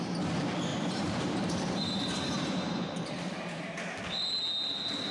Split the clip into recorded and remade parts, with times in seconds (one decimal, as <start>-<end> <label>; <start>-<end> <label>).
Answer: 0.0-0.7 recorded; 0.7-3.8 remade; 3.8-5.1 recorded